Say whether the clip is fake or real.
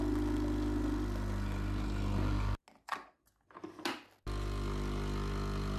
real